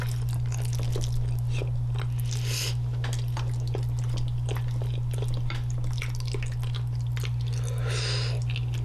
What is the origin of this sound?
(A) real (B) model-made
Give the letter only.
A